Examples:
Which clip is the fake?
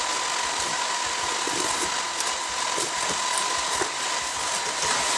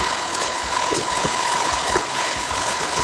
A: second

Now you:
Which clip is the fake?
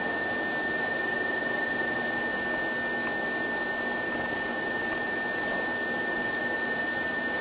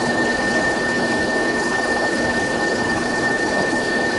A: second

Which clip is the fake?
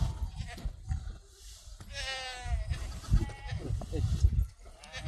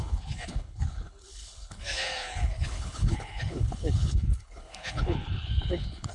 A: second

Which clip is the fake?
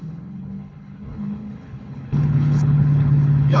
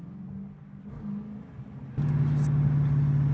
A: first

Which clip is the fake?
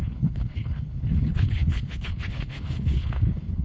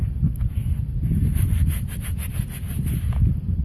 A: first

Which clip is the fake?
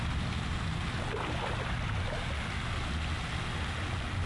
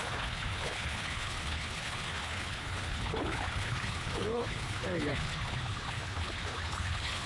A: second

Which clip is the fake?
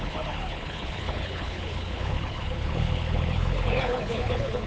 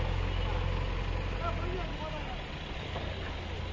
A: first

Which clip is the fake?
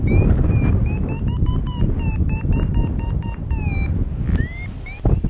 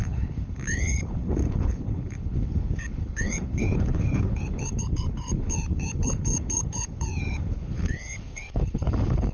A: second